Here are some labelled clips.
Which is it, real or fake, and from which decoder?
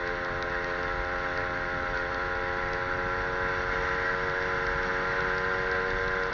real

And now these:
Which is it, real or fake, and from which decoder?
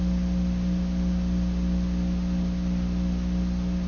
real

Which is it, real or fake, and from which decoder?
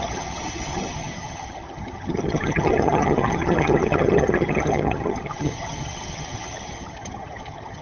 fake, vocoder, HiFi-GAN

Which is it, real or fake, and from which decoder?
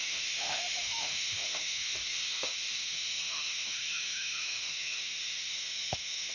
fake, autoencoder, DAC-VAE